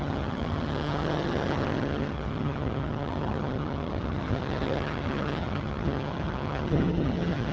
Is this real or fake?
fake